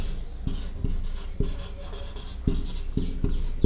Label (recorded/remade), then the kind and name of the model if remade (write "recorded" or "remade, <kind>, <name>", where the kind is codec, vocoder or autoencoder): recorded